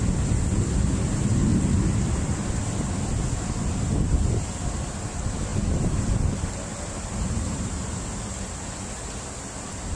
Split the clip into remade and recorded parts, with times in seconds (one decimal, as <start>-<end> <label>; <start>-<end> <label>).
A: 0.0-6.7 recorded; 6.7-7.7 remade; 7.7-10.0 recorded